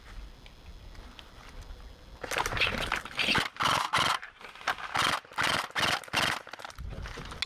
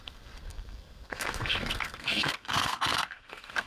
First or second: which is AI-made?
second